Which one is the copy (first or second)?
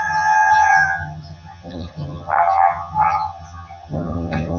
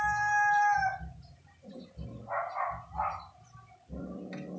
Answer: first